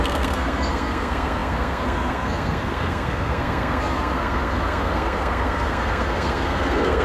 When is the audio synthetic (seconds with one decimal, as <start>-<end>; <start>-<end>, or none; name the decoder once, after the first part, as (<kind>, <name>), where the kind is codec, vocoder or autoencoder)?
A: 0.0-7.0 (codec, SNAC)